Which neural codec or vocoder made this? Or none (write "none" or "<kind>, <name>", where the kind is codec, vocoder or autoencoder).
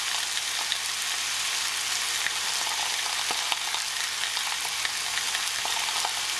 none